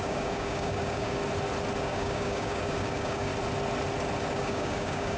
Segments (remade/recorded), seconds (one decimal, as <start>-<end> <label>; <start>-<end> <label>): 0.0-1.2 remade; 1.2-1.8 recorded; 1.8-3.3 remade; 3.3-4.3 recorded; 4.3-5.2 remade